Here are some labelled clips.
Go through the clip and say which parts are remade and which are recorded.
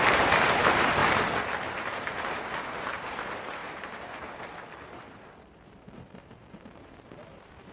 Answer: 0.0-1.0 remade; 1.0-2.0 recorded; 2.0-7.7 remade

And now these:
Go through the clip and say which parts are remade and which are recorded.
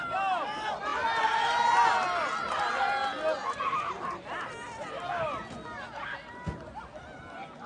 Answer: 0.0-7.7 recorded